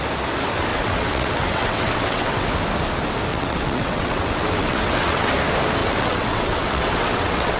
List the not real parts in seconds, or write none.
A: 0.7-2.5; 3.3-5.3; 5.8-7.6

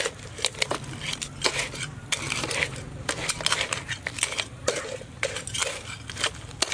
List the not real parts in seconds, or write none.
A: none

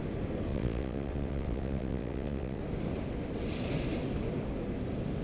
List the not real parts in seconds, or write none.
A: 0.5-2.6

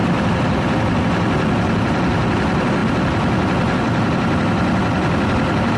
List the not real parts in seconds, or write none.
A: none

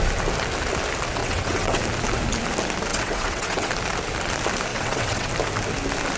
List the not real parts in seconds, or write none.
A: 1.2-1.8; 2.9-3.7; 4.7-5.3

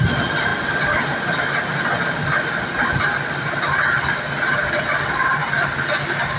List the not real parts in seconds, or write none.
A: none

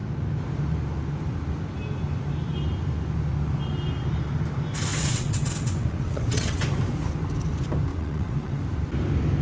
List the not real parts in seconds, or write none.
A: 4.9-6.6; 7.9-8.6